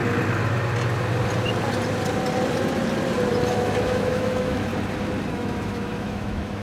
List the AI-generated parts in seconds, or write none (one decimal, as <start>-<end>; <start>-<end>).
3.5-4.7; 5.3-6.6